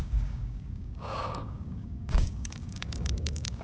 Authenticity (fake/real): fake